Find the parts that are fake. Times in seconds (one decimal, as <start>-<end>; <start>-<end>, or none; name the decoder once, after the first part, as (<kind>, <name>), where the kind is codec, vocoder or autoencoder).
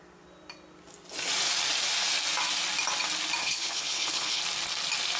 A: 3.4-4.4 (codec, HILCodec)